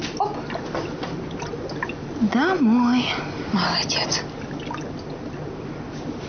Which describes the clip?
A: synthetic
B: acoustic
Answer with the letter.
B